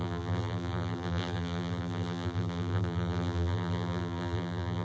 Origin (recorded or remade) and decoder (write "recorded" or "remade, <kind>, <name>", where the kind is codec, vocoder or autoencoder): remade, vocoder, BigVGAN v2